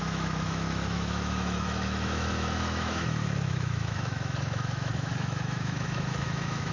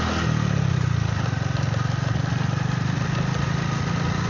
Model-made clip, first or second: first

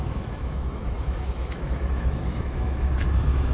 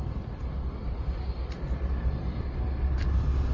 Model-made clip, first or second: first